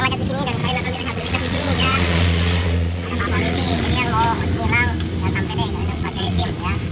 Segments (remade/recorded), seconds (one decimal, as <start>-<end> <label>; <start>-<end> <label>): 0.0-0.6 recorded; 0.6-3.8 remade; 3.8-5.8 recorded; 5.8-6.5 remade; 6.5-6.9 recorded